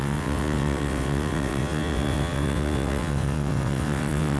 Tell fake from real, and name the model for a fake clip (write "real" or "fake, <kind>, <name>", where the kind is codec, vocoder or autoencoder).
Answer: fake, vocoder, WaveNeXt